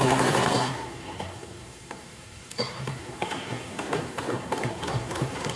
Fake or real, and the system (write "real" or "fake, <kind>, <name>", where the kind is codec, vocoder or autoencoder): fake, codec, SNAC